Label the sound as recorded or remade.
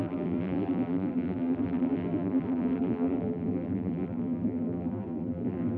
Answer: remade